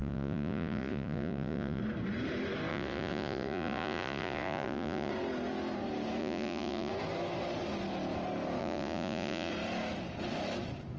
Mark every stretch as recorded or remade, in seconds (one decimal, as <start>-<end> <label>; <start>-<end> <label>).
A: 0.0-1.8 remade; 1.8-2.7 recorded; 2.7-5.1 remade; 5.1-6.2 recorded; 6.2-6.9 remade; 6.9-8.6 recorded; 8.6-9.5 remade; 9.5-11.0 recorded